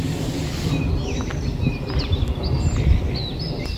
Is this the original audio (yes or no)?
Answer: yes